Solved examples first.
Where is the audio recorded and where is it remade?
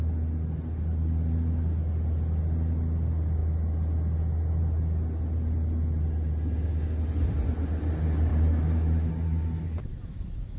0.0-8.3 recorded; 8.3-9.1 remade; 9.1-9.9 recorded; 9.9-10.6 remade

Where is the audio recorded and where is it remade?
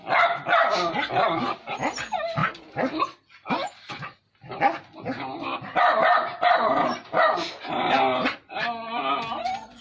0.0-9.8 recorded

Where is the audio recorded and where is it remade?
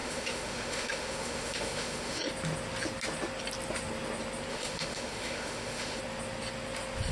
0.0-2.2 remade; 2.2-4.5 recorded; 4.5-6.0 remade; 6.0-7.1 recorded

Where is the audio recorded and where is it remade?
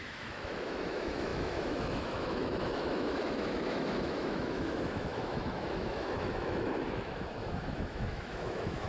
0.0-8.9 remade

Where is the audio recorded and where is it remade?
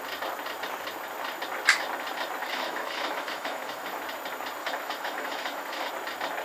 0.0-2.4 recorded; 2.4-4.0 remade; 4.0-4.6 recorded; 4.6-5.9 remade; 5.9-6.4 recorded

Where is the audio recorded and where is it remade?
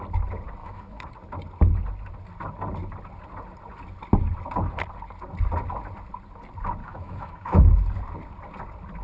0.0-0.6 recorded; 0.6-1.1 remade; 1.1-6.8 recorded; 6.8-7.7 remade; 7.7-9.0 recorded